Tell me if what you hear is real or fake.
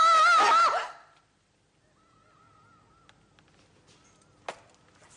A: real